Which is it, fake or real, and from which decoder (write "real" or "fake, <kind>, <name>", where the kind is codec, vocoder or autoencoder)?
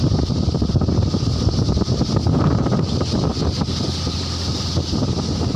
real